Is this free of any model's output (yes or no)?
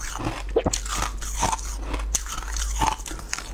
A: yes